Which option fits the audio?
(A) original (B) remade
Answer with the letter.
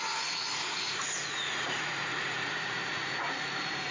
B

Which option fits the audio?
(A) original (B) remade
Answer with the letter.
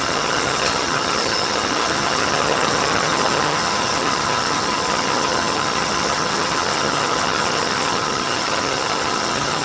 B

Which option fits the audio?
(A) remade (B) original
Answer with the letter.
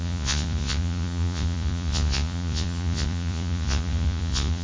A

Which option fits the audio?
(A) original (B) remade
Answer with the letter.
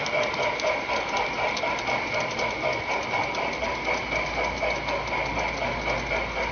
A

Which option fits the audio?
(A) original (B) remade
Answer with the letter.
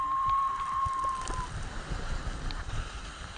A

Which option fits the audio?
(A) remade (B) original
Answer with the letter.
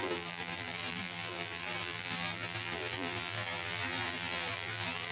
A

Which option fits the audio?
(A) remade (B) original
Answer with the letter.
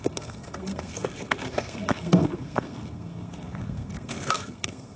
A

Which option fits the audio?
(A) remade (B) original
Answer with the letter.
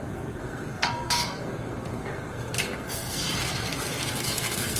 A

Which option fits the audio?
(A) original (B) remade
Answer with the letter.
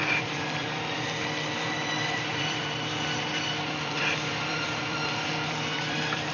B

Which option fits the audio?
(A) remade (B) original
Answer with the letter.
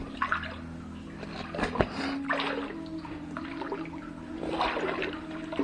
A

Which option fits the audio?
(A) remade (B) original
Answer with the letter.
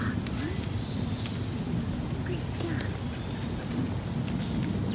B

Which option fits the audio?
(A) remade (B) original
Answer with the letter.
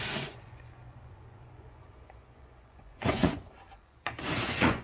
A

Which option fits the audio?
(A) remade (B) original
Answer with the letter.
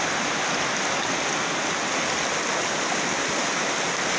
B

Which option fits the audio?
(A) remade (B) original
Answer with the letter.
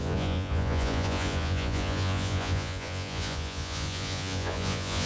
A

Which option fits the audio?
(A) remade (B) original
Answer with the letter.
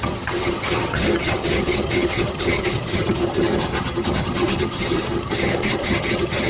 A